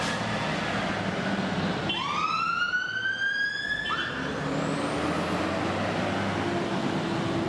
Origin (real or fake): real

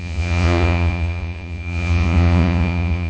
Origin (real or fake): fake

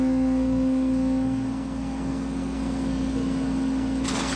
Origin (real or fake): fake